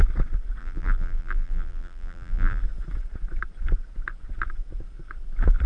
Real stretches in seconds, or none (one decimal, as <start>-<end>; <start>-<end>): 0.0-0.6; 2.6-5.7